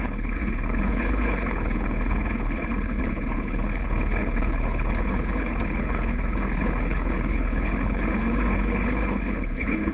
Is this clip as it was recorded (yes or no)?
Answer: no